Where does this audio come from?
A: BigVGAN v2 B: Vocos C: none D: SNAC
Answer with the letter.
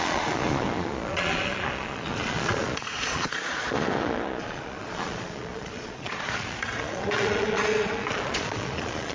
B